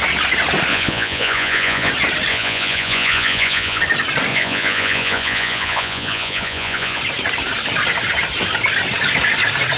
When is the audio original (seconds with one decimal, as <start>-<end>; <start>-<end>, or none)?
0.0-0.7; 1.9-2.3; 3.8-4.3; 7.0-9.8